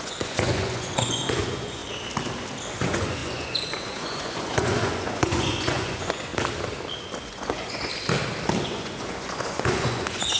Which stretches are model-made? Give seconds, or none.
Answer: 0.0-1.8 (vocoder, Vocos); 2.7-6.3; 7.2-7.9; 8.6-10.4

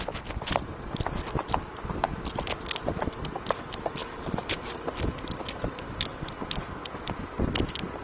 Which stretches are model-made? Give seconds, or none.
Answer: 4.0-4.7 (vocoder, BigVGAN v2)

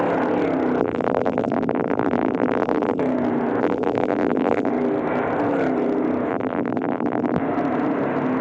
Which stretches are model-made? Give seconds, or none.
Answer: 0.8-3.0 (vocoder, BigVGAN v2); 3.6-4.7; 6.3-7.4

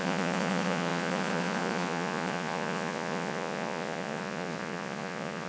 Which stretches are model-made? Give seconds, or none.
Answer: 0.0-5.5 (vocoder, Vocos)

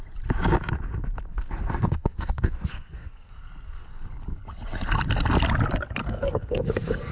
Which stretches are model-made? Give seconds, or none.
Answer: 1.3-3.3 (codec, SNAC); 6.0-7.1

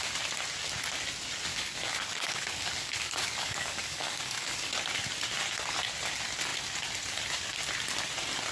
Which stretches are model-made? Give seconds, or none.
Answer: 1.5-4.7 (codec, DAC)

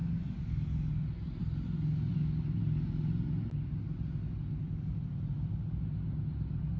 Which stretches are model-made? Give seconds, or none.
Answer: none

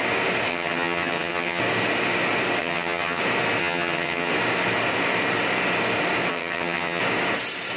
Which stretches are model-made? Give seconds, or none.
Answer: 0.5-1.6 (vocoder, HiFi-GAN); 2.6-3.2; 3.6-4.3; 6.3-7.0